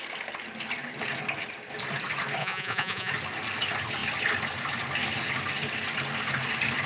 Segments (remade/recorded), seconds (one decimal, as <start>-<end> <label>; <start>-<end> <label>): 0.0-2.4 recorded; 2.4-3.1 remade; 3.1-6.9 recorded